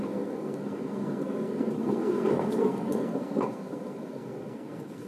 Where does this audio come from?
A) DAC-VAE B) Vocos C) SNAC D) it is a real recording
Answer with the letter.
C